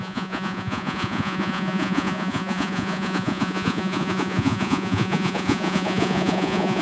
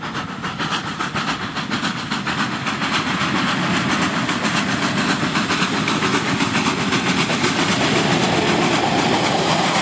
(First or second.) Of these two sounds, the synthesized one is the first